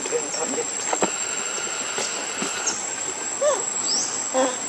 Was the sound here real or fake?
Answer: real